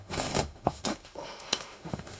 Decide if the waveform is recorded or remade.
remade